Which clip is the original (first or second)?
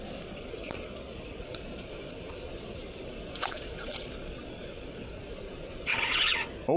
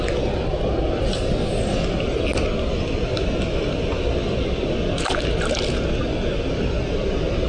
second